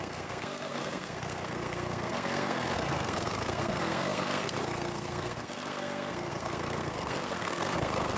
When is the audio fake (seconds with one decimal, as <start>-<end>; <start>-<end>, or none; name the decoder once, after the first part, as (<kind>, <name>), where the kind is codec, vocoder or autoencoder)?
0.0-8.2 (codec, SNAC)